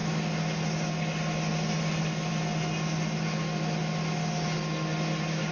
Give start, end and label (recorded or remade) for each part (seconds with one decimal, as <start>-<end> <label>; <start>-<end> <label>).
0.0-5.5 recorded